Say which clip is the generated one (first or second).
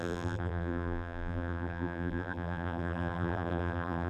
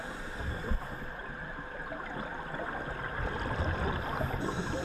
first